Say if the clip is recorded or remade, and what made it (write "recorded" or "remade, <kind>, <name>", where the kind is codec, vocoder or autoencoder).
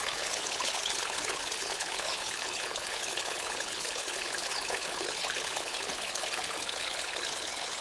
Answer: remade, codec, HILCodec